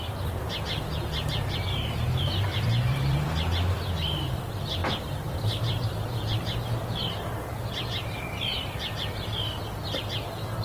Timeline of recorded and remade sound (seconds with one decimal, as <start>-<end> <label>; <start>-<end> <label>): 0.0-2.5 recorded; 2.5-3.8 remade; 3.8-4.8 recorded; 4.8-6.6 remade; 6.6-10.6 recorded